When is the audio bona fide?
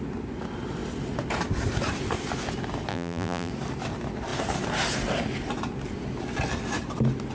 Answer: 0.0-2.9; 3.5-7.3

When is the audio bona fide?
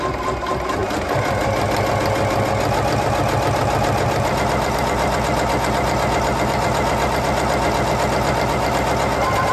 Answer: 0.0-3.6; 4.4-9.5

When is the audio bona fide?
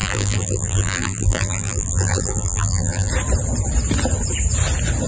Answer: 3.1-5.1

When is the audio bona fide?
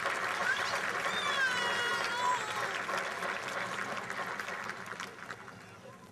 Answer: 0.0-0.4; 1.1-6.1